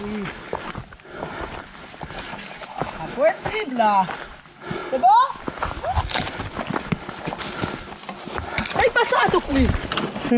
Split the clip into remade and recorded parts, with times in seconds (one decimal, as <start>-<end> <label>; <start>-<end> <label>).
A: 0.0-2.7 recorded; 2.7-3.7 remade; 3.7-10.4 recorded